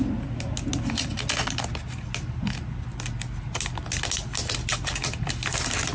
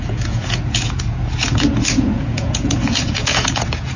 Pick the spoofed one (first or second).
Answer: second